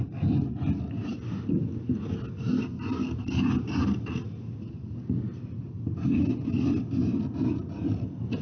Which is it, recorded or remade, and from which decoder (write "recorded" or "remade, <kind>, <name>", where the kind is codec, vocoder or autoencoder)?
recorded